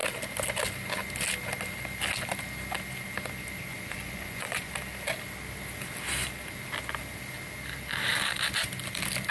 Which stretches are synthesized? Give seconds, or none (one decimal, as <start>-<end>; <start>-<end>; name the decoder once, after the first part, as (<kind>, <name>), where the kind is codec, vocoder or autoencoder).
3.7-4.7 (vocoder, Vocos)